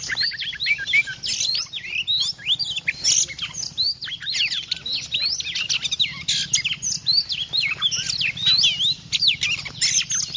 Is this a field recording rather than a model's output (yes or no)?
yes